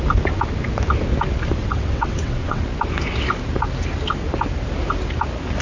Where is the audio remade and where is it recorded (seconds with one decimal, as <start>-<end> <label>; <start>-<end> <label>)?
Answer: 0.0-1.6 recorded; 1.6-2.6 remade; 2.6-5.6 recorded